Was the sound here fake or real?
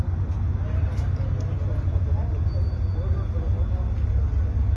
real